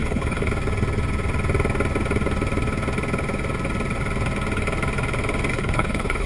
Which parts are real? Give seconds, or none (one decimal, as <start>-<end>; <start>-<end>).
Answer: 0.5-5.5